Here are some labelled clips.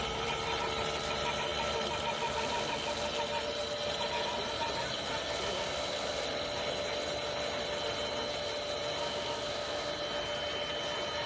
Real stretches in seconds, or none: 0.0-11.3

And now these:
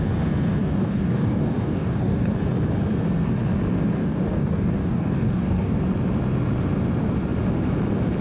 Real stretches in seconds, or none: 0.0-0.6; 2.3-4.0; 5.8-8.2

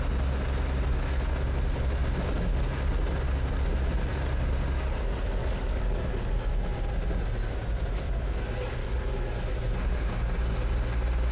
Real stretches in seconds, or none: 0.0-5.4; 6.5-8.8; 9.3-11.3

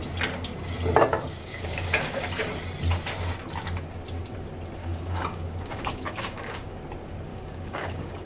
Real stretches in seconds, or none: 0.0-1.1; 2.2-4.8; 6.8-7.3